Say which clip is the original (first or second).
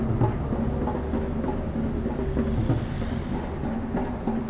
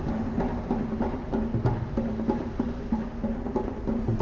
first